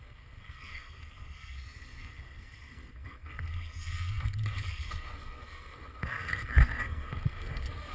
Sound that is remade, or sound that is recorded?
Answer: remade